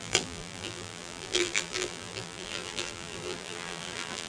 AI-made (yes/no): yes